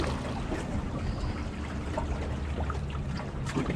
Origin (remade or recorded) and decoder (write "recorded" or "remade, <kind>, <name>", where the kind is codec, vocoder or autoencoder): recorded